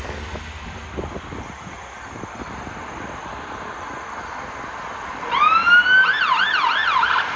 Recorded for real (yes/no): yes